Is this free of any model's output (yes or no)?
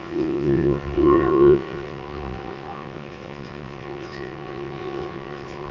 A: no